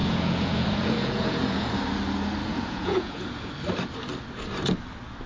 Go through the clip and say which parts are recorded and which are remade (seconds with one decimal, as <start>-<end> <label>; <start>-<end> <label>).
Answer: 0.0-1.8 remade; 1.8-2.4 recorded; 2.4-3.5 remade; 3.5-5.3 recorded